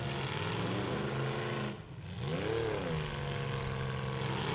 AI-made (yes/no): no